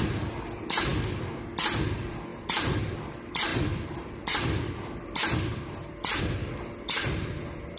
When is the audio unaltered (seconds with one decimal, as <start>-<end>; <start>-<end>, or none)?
0.9-1.5